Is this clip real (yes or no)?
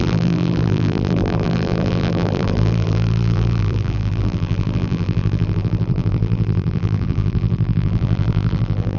no